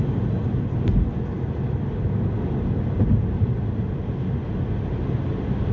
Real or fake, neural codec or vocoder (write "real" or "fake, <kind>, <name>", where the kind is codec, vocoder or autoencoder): real